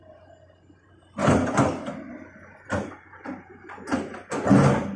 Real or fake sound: real